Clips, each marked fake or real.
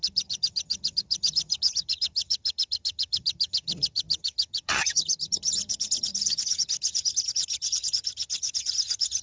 fake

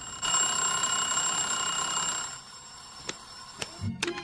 real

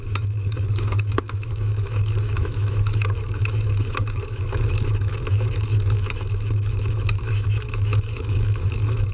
fake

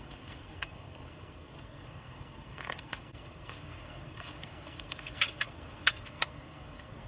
fake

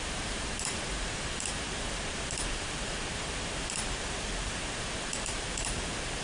fake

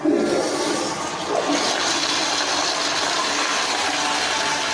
real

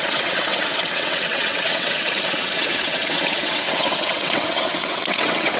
fake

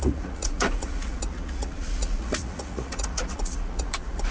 fake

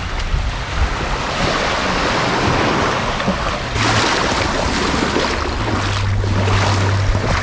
real